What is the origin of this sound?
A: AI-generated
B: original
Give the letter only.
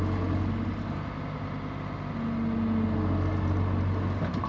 B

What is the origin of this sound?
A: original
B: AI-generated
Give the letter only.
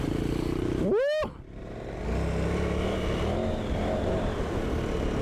A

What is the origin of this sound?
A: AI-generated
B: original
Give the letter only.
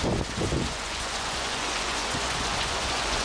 A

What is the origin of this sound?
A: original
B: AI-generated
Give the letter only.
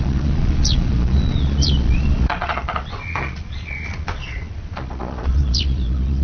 B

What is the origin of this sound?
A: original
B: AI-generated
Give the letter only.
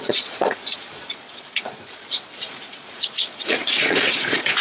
B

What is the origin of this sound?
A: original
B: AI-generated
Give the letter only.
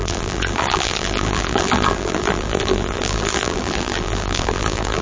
B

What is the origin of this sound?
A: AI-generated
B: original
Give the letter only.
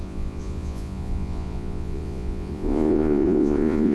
A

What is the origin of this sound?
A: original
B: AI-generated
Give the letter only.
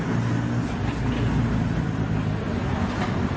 A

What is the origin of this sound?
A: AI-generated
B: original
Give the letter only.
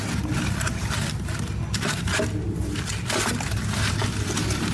B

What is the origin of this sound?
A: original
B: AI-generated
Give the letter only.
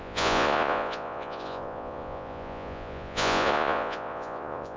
B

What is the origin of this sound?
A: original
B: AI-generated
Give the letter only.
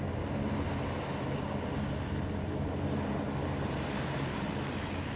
A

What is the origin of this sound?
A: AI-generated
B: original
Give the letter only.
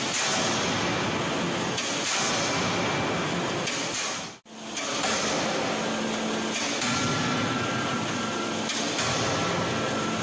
B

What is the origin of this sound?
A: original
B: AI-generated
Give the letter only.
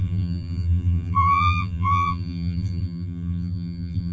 B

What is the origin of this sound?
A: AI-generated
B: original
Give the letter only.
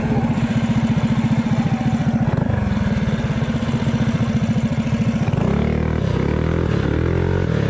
B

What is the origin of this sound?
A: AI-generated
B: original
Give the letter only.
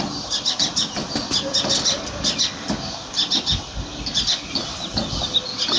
B